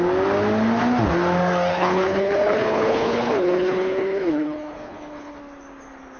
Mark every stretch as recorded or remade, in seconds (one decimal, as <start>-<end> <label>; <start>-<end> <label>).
0.0-1.7 recorded; 1.7-5.4 remade; 5.4-6.2 recorded